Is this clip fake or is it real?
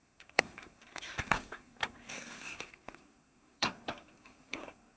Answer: fake